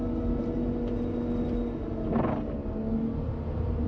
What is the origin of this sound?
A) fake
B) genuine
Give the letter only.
B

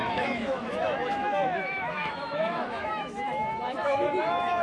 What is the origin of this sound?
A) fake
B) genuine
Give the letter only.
A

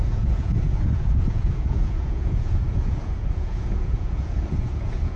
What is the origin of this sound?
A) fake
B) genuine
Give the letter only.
A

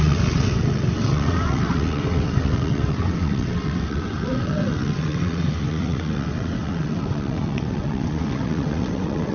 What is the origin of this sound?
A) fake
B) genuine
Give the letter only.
A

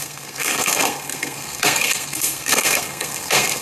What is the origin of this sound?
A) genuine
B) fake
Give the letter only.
B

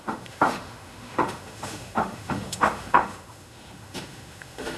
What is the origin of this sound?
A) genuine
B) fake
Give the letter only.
B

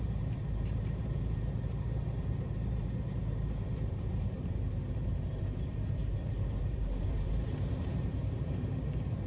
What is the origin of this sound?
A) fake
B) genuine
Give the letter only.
A